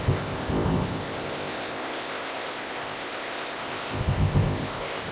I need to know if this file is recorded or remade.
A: remade